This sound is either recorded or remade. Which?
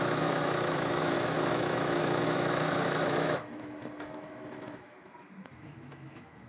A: remade